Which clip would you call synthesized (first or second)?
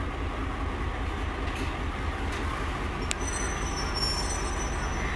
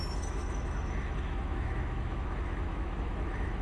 second